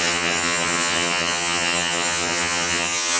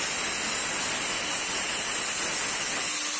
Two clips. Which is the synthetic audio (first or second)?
first